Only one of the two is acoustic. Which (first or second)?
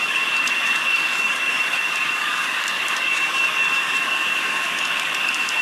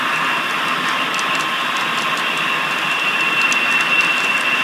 second